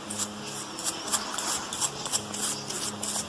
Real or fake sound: real